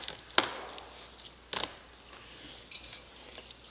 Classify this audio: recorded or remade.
recorded